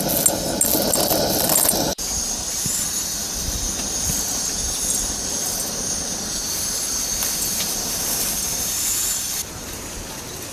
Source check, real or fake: real